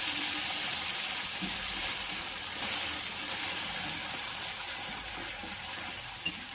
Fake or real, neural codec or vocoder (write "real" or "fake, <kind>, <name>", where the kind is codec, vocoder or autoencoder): real